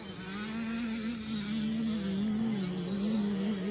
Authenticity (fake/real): real